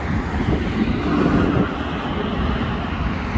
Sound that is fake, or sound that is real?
real